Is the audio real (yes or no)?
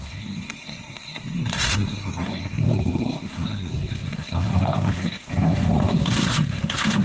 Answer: no